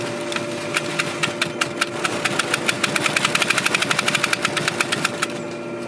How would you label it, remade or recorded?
recorded